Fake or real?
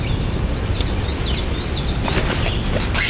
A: real